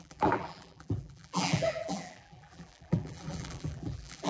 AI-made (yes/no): yes